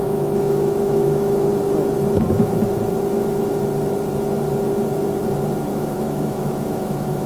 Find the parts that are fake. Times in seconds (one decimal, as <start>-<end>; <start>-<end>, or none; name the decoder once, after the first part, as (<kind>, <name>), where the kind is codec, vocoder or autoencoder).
0.0-1.5 (autoencoder, DAC-VAE); 5.7-7.3